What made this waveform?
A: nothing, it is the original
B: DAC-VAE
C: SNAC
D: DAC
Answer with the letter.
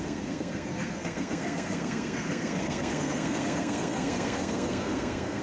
C